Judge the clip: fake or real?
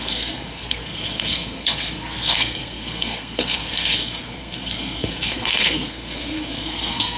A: fake